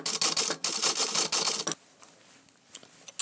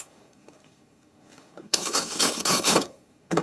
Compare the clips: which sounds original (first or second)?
first